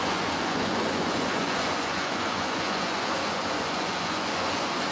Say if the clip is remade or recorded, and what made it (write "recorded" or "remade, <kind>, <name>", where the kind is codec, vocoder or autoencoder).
remade, vocoder, Vocos